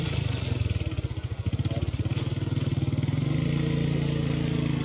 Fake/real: real